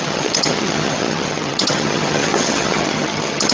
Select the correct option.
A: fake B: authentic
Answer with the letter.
A